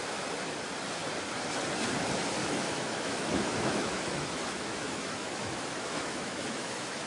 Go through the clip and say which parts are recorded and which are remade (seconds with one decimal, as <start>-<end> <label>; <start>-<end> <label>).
0.0-2.4 recorded; 2.4-7.1 remade